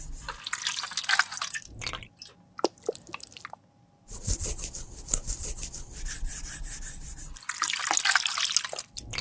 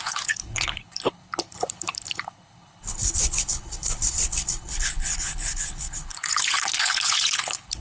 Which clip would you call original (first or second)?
first